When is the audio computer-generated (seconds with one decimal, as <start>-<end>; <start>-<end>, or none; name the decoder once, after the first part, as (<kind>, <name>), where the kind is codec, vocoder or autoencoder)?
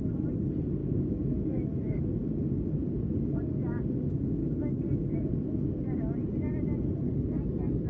0.8-2.0 (autoencoder, DAC-VAE)